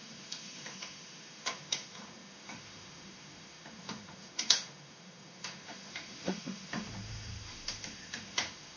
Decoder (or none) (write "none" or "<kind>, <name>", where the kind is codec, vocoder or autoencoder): autoencoder, DAC-VAE